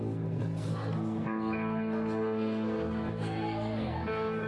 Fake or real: fake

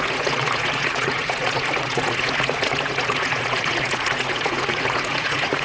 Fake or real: fake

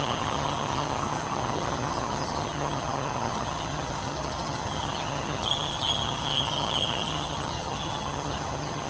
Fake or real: fake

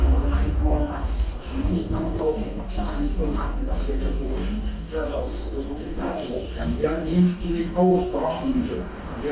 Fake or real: fake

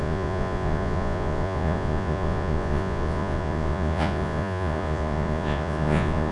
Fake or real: fake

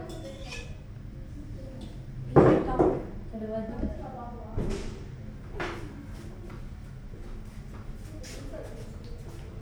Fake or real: real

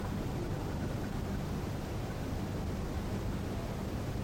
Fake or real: real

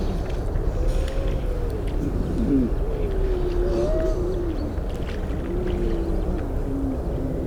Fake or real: real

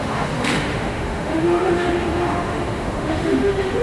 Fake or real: fake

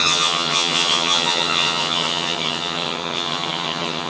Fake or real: fake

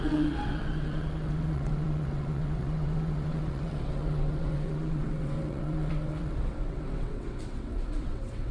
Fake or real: fake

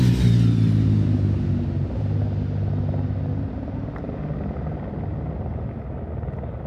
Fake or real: real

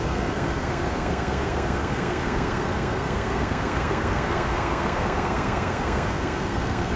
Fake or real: fake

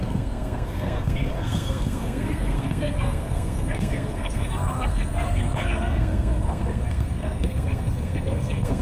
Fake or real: fake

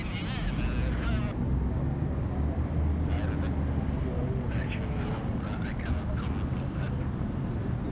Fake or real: real